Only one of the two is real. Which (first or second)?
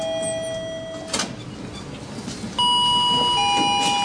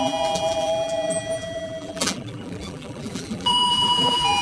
first